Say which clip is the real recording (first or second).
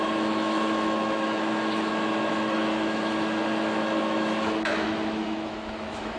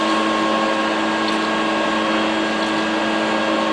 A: second